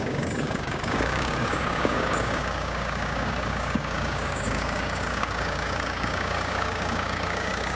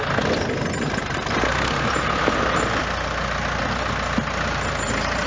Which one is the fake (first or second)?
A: first